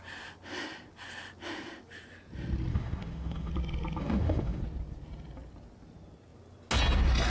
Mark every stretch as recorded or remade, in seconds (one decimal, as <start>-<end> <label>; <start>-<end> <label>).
0.0-2.7 recorded; 2.7-3.5 remade; 3.5-4.0 recorded; 4.0-4.6 remade; 4.6-7.3 recorded